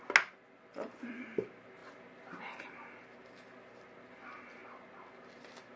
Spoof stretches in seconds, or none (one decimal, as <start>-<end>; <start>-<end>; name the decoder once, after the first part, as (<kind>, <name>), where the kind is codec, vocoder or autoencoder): none